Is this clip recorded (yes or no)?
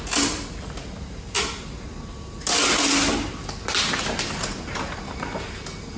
yes